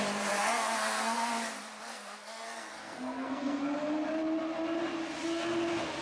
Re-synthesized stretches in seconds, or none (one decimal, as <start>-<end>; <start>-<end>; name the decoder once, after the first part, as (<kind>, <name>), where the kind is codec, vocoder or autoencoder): 0.4-1.3 (codec, SNAC); 1.9-3.6